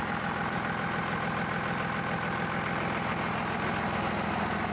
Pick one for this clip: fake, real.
real